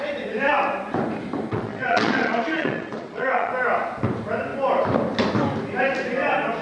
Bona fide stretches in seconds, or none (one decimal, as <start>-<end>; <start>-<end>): 0.0-1.5; 3.5-6.6

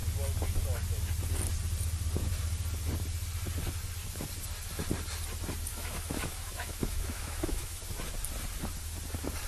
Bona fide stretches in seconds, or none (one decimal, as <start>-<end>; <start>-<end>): 0.0-5.7; 7.8-9.5

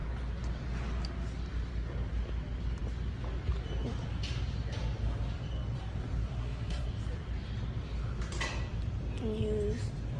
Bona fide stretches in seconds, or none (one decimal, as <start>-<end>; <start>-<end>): 0.0-6.4; 6.9-10.2

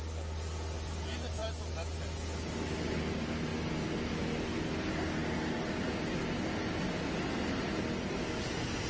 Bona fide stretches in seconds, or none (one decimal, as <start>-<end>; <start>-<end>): 0.0-8.9

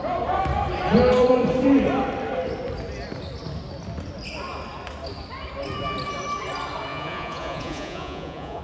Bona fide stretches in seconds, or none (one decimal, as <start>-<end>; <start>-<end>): 0.0-6.9

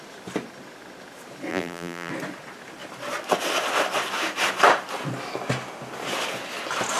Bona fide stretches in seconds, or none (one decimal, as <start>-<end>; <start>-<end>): 0.0-1.5; 2.1-7.0

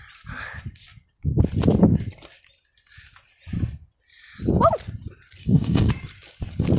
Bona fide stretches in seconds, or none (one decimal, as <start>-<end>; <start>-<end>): 0.0-5.4; 5.9-6.8